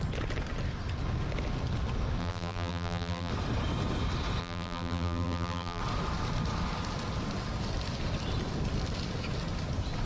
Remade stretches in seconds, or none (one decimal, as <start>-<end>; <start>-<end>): 2.2-3.3; 4.4-5.8